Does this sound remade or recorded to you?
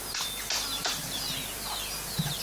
recorded